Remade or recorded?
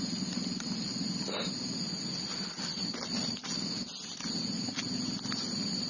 recorded